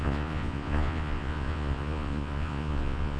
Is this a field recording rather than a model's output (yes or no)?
no